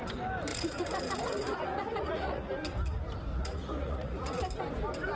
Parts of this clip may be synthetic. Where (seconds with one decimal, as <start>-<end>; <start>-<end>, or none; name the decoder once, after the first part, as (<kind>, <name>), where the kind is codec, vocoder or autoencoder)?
0.5-2.5 (vocoder, Vocos); 3.3-4.4

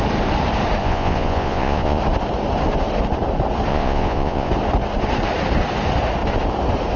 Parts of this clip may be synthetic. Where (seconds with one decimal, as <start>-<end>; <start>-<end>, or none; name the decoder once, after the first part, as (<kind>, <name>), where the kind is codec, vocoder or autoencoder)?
0.8-2.0 (vocoder, Vocos); 3.7-4.5

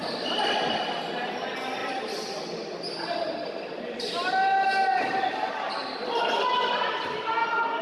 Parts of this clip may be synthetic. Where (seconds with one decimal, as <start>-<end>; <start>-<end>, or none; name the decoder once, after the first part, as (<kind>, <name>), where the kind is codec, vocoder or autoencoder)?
none

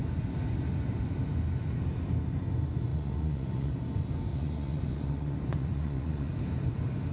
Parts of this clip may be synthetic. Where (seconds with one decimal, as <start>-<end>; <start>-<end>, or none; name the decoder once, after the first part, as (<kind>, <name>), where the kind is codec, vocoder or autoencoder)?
2.9-3.7 (vocoder, Vocos); 4.3-6.3

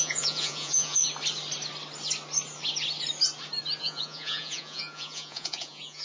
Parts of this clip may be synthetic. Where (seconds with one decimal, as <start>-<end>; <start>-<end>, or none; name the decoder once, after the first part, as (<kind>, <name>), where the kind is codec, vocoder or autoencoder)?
0.0-1.0 (vocoder, Vocos); 3.8-6.0